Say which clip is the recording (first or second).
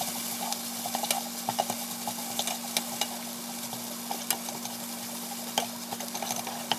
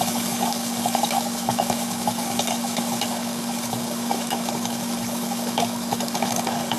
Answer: first